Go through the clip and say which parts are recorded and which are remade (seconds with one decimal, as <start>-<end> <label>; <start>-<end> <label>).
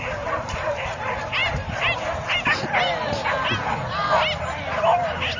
0.0-5.4 recorded